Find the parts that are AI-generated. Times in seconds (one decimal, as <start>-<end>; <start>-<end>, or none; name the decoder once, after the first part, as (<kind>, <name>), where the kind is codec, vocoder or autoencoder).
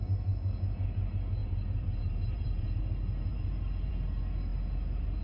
1.4-2.8 (vocoder, BigVGAN v2); 3.3-3.9